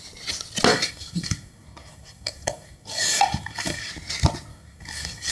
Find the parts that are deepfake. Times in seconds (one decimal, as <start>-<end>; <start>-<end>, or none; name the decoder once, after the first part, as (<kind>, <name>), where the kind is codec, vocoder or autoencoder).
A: 0.7-3.9 (codec, DAC); 4.5-5.3